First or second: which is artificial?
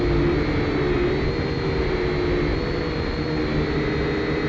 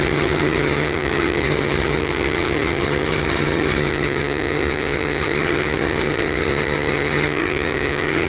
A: second